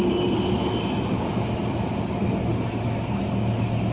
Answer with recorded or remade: recorded